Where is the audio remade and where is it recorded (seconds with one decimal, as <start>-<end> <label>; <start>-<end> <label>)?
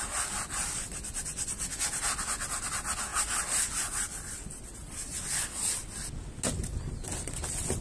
0.0-7.8 recorded